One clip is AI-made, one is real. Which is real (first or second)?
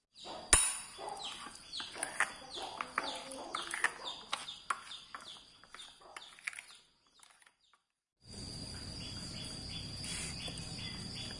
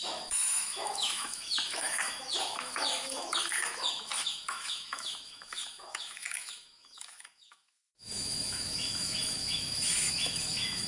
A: first